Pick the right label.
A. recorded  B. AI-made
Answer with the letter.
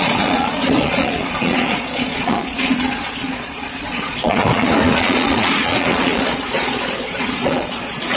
B